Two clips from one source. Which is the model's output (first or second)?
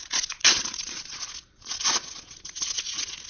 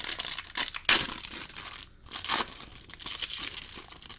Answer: first